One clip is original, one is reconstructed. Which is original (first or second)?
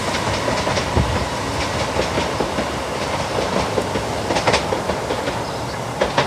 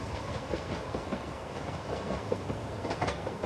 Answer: first